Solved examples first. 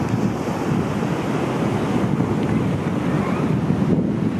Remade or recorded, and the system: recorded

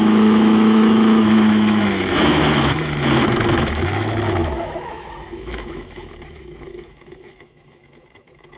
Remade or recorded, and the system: remade, autoencoder, DAC-VAE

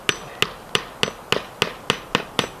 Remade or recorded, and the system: recorded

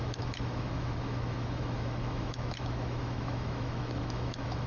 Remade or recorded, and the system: remade, autoencoder, DAC-VAE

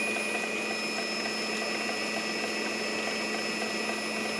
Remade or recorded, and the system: recorded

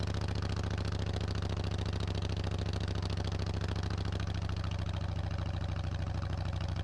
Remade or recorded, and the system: recorded